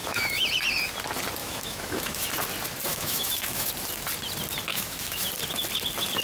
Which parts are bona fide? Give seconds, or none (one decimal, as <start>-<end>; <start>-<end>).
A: 0.5-1.4; 2.3-2.9; 3.7-4.7; 5.3-6.2